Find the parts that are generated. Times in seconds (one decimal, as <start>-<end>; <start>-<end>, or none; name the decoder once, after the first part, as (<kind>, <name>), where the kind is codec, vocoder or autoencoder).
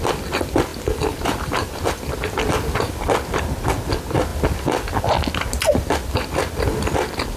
none